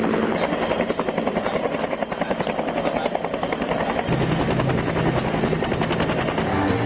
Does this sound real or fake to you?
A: real